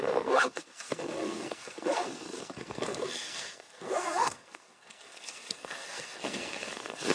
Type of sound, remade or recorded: remade